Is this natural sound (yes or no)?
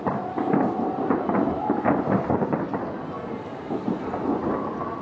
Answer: yes